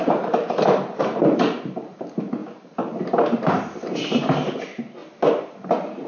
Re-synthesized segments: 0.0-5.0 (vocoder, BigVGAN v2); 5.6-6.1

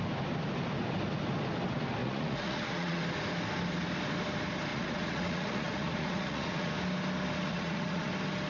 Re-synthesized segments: 2.0-3.0 (vocoder, Vocos); 4.7-6.7; 7.4-8.1

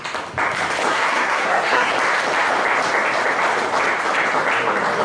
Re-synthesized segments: 0.9-1.9 (codec, SNAC)

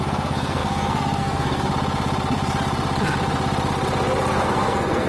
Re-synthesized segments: 0.0-1.7 (codec, SNAC); 4.3-5.1

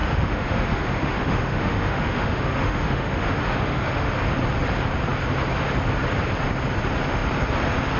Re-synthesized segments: 0.0-4.1 (autoencoder, DAC-VAE)

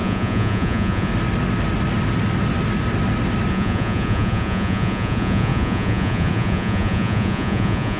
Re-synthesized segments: 0.0-1.1 (vocoder, Vocos); 3.5-8.0